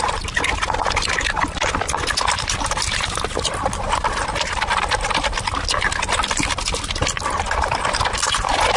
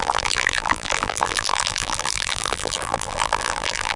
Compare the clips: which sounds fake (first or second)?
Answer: second